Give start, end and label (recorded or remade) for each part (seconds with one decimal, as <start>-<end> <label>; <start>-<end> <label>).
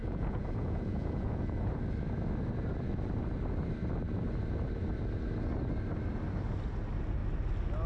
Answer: 0.0-1.8 remade; 1.8-7.9 recorded